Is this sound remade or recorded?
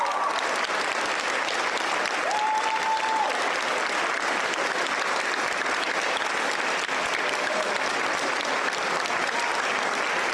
recorded